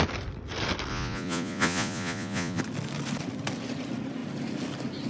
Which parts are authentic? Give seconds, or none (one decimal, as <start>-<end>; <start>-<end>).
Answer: 0.0-0.9; 2.6-5.1